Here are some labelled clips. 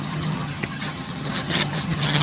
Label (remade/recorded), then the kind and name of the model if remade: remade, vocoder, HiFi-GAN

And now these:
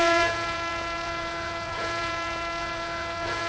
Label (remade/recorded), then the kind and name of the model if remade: remade, vocoder, Vocos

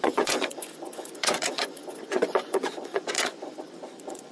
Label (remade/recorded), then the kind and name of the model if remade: remade, vocoder, Vocos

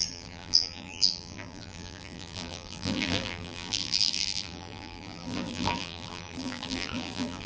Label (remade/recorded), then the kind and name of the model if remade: remade, vocoder, BigVGAN v2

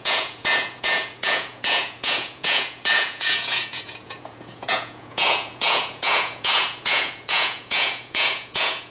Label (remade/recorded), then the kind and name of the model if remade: remade, vocoder, Vocos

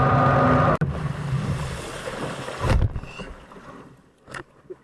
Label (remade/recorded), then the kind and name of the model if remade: recorded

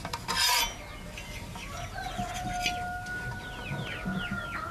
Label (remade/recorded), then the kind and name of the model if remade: recorded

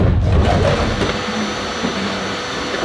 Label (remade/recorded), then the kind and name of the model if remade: recorded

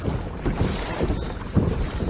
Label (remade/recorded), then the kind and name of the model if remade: recorded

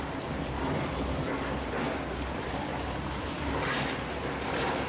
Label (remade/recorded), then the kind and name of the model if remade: remade, vocoder, BigVGAN v2